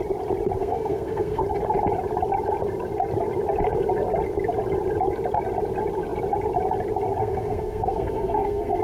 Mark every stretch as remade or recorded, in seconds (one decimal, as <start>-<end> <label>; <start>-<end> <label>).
0.0-0.6 recorded; 0.6-1.4 remade; 1.4-7.2 recorded; 7.2-8.8 remade